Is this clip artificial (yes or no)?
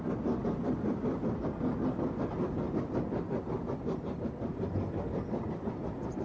no